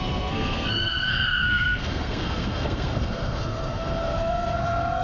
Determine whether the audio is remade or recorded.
remade